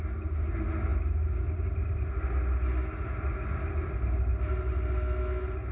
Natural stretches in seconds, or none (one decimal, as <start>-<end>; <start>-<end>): 0.0-5.7

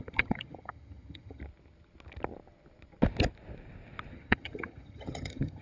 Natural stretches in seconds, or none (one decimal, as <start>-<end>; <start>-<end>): 1.4-4.1

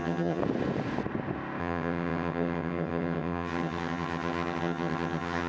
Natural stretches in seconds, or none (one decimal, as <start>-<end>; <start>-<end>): 0.4-1.6

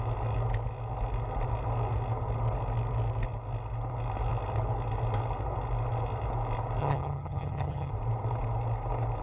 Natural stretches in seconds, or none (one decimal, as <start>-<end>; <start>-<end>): 0.0-6.8; 7.9-9.2

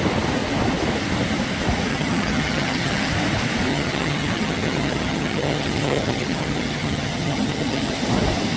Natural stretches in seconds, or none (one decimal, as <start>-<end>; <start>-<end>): 0.0-1.9; 3.1-3.7; 7.9-8.6

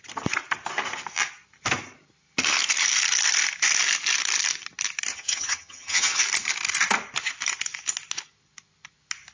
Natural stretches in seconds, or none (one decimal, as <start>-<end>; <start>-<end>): 0.0-5.1; 6.2-9.3